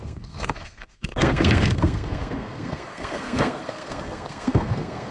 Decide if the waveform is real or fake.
fake